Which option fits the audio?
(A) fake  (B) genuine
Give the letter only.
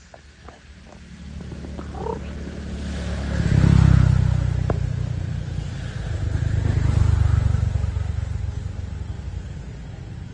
B